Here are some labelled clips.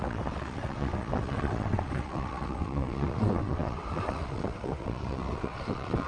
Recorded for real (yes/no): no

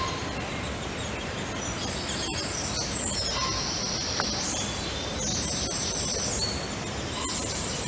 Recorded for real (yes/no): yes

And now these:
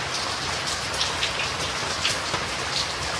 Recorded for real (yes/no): yes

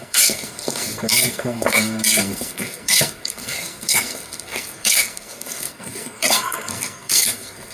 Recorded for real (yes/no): no